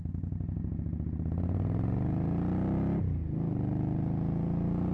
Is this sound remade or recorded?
recorded